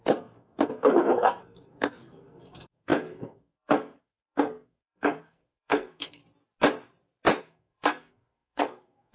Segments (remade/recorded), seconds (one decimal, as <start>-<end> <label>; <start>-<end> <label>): 0.0-6.2 remade; 6.2-7.4 recorded; 7.4-9.1 remade